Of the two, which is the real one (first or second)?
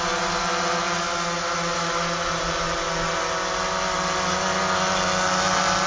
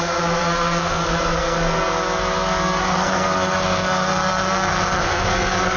first